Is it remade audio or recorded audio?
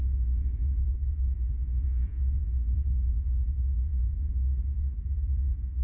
remade